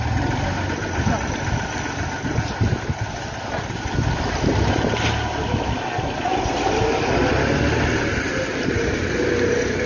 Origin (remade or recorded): recorded